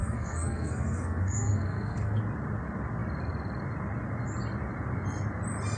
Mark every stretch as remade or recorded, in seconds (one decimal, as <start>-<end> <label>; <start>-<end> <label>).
0.0-2.2 remade; 2.2-5.8 recorded